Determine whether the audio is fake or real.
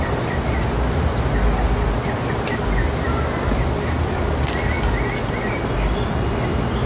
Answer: real